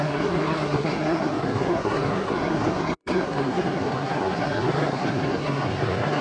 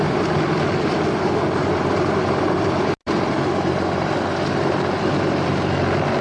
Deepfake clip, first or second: first